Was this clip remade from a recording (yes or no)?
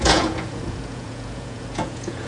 yes